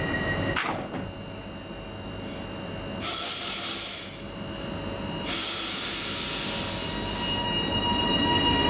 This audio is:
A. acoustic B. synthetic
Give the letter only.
A